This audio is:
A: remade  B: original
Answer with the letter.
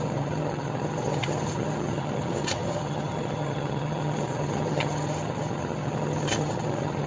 A